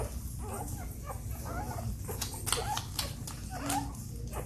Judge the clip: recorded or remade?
recorded